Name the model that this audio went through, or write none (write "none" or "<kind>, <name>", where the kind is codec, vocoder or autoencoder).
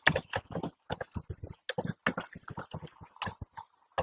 none